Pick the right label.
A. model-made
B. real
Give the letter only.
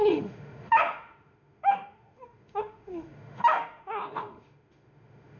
A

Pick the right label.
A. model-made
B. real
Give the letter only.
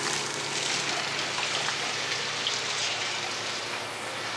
B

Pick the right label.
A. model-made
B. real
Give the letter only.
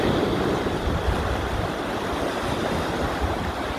B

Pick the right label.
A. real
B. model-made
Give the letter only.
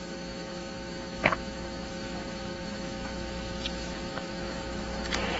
B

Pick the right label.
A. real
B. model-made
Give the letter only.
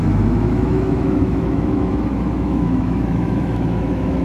B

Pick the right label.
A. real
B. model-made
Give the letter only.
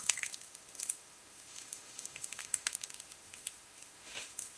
B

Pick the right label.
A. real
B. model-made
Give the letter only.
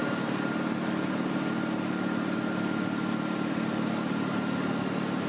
A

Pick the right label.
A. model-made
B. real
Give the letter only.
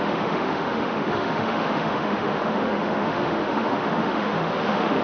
A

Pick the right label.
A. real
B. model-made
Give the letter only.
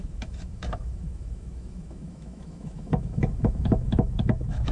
B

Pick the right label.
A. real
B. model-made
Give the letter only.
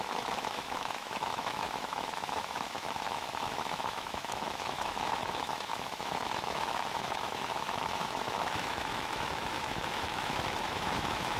B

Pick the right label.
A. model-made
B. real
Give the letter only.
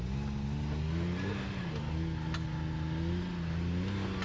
B